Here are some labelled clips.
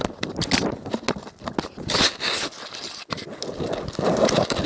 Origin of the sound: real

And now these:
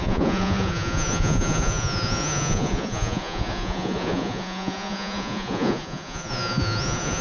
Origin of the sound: fake